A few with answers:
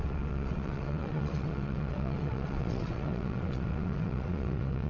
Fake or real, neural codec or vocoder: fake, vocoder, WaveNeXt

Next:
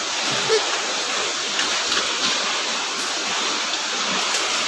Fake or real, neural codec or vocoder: real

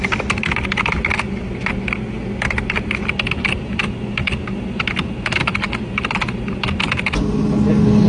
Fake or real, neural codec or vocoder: real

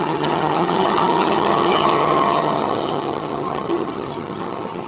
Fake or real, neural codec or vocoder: fake, vocoder, HiFi-GAN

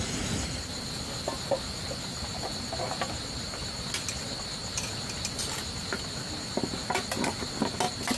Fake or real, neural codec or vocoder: real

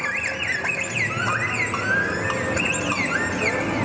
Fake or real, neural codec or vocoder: real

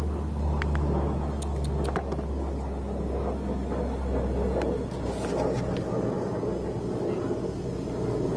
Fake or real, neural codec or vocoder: real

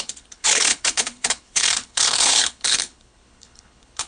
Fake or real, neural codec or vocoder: fake, codec, HILCodec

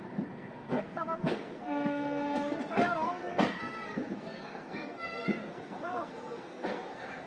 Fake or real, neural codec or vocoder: fake, codec, SNAC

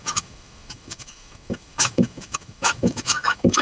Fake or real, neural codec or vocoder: fake, autoencoder, DAC-VAE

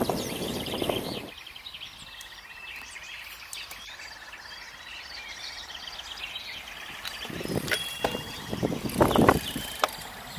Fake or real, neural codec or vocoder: real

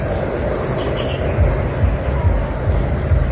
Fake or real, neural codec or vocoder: real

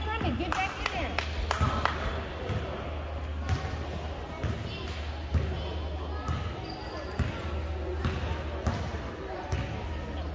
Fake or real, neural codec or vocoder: real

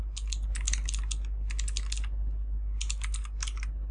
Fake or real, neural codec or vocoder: real